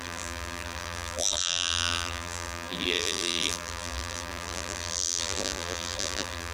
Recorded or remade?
remade